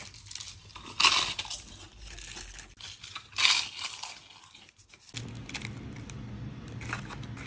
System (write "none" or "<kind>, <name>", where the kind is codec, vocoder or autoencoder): none